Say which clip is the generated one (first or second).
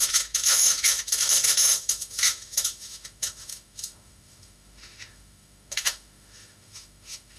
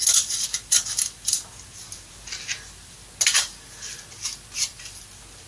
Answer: first